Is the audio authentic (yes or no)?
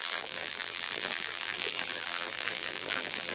no